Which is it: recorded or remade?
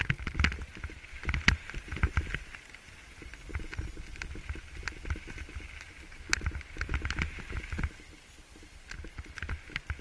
recorded